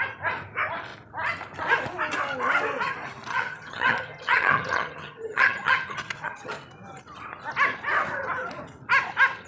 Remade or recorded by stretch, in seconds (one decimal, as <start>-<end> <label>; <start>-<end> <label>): 0.0-3.3 recorded; 3.3-6.5 remade; 6.5-9.5 recorded